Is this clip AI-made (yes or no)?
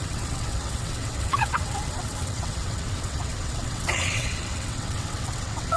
yes